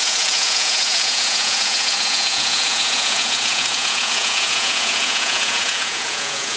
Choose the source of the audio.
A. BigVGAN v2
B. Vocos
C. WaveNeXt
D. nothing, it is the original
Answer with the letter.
B